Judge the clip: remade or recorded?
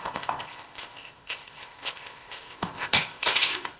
remade